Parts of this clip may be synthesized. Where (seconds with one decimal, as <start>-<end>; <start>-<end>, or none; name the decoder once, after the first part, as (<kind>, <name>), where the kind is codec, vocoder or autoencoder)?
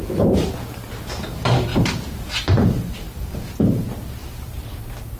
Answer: 1.7-3.5 (vocoder, BigVGAN v2); 4.2-4.8